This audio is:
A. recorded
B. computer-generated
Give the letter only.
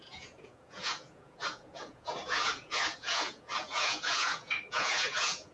B